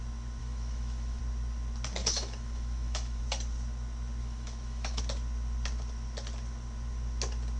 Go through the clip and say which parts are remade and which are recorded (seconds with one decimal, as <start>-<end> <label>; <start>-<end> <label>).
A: 0.0-0.4 recorded; 0.4-1.2 remade; 1.2-2.0 recorded; 2.0-3.2 remade; 3.2-4.2 recorded; 4.2-5.0 remade; 5.0-7.6 recorded